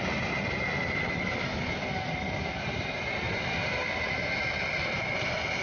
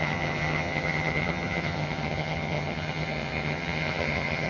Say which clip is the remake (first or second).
second